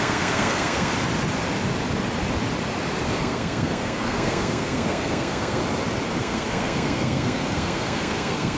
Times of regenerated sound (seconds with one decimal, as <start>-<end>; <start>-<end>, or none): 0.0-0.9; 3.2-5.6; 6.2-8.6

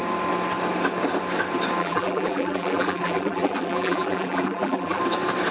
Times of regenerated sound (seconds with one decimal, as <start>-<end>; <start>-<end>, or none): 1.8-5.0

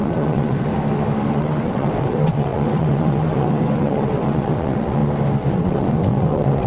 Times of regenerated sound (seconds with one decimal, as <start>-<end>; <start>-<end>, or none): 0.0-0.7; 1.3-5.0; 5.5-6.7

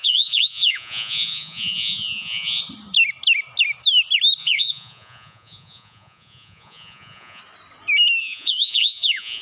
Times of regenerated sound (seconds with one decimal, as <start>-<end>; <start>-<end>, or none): 0.0-2.6; 4.4-7.4; 8.2-9.4

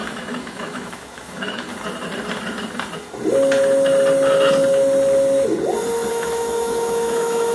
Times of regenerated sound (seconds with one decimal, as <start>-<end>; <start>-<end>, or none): 0.0-1.7; 6.1-7.5